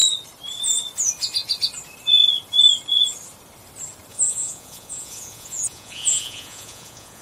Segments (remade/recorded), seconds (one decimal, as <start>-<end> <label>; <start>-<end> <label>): 0.0-4.1 recorded; 4.1-7.2 remade